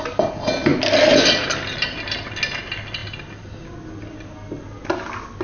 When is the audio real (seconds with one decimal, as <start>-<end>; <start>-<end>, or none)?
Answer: 0.0-0.7; 2.3-5.4